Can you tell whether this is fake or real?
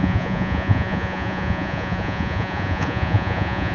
fake